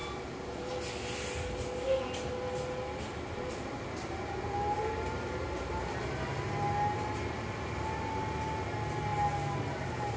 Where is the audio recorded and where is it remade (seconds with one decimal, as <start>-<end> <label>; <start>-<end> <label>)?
0.0-10.2 recorded